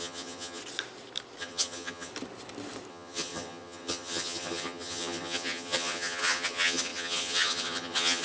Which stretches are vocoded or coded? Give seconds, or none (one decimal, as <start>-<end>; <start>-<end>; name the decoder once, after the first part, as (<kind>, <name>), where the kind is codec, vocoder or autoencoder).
0.0-0.6 (vocoder, HiFi-GAN); 1.4-2.1; 2.9-8.2